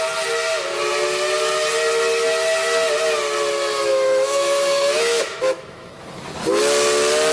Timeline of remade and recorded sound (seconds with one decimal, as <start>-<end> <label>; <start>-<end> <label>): 0.0-3.9 recorded; 3.9-5.9 remade; 5.9-7.3 recorded